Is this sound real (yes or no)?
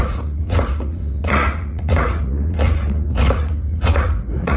no